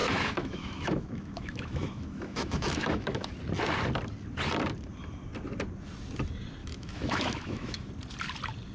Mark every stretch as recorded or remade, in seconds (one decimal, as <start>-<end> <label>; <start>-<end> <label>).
0.0-3.3 remade; 3.3-6.6 recorded; 6.6-7.9 remade; 7.9-8.7 recorded